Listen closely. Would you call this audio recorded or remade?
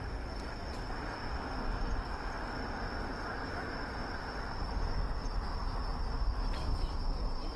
recorded